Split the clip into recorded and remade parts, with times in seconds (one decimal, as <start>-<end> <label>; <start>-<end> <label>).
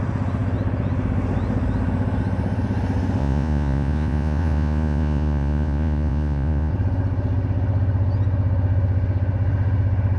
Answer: 0.0-3.2 recorded; 3.2-6.7 remade; 6.7-10.2 recorded